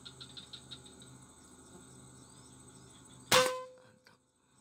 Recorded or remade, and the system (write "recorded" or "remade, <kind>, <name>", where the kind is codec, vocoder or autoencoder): recorded